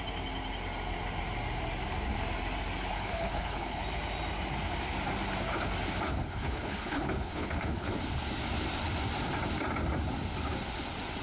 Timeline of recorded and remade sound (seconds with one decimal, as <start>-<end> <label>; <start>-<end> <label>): 0.0-2.9 recorded; 2.9-3.8 remade; 3.8-6.1 recorded; 6.1-7.9 remade; 7.9-11.2 recorded